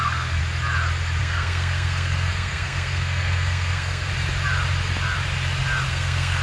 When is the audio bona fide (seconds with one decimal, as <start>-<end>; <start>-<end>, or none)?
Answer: 0.4-1.2; 4.1-5.9